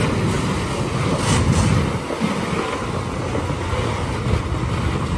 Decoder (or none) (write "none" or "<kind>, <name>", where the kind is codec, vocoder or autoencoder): none